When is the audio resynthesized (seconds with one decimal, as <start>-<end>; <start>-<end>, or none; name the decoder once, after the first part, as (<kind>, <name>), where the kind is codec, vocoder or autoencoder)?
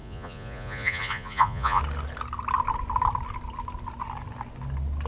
0.0-1.8 (vocoder, Vocos)